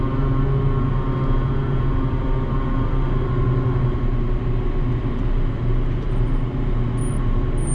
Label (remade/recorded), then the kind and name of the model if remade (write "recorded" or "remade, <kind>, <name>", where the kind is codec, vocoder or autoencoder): recorded